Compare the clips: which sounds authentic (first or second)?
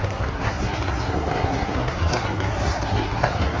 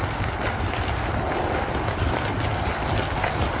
second